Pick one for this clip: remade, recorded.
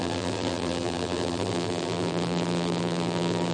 remade